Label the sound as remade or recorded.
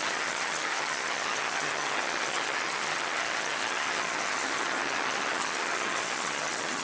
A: remade